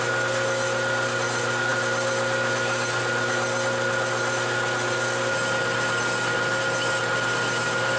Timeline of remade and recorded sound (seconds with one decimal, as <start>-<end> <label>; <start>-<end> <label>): 0.0-8.0 recorded